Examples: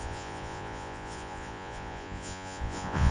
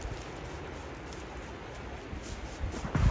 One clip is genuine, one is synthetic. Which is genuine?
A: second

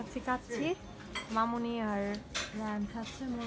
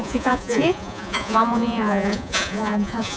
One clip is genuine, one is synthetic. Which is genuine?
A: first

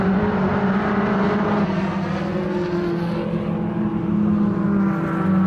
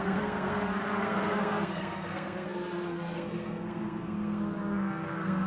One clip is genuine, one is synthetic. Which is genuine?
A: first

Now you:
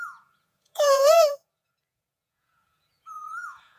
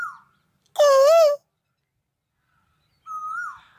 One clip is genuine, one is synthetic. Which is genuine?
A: second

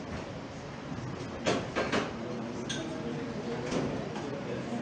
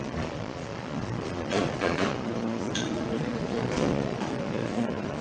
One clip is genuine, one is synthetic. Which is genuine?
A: first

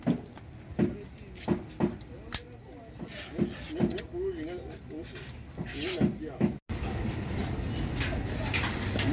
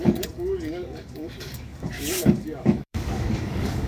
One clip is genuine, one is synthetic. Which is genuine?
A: first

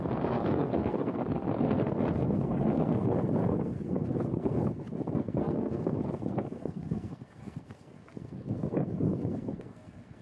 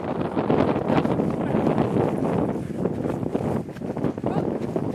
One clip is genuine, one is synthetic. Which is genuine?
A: second